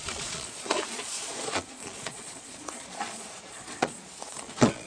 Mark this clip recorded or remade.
remade